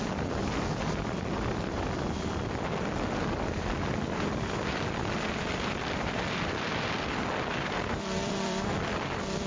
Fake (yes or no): yes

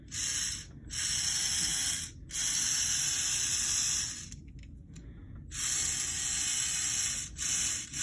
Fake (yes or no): no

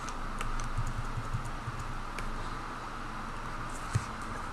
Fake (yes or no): no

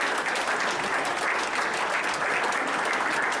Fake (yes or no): no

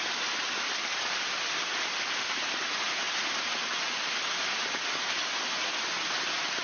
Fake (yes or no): no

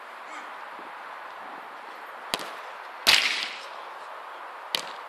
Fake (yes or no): no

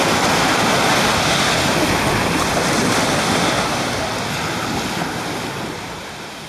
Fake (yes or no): no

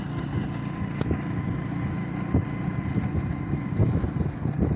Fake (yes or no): no